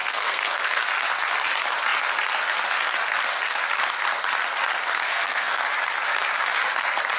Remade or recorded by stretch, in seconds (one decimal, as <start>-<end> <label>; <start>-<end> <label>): 0.0-0.8 remade; 0.8-5.1 recorded; 5.1-5.6 remade; 5.6-7.2 recorded